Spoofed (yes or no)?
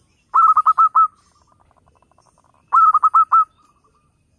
no